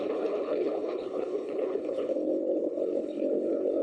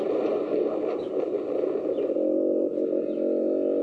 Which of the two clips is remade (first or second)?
first